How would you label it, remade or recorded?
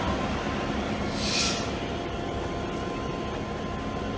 recorded